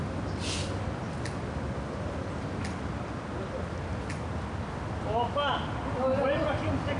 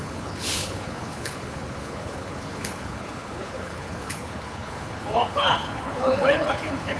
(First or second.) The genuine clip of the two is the first